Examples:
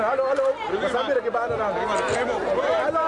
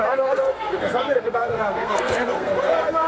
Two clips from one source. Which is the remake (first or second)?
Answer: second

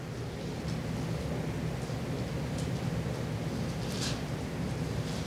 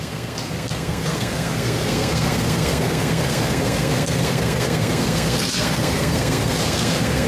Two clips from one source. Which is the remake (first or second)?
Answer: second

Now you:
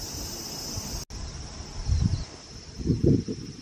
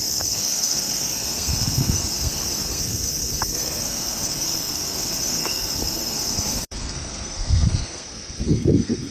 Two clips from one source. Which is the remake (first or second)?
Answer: second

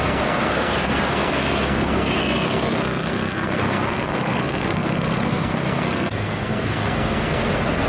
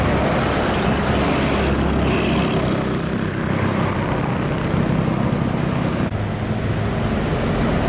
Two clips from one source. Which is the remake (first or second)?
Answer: first